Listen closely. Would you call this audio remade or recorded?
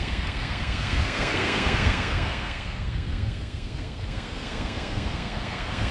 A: remade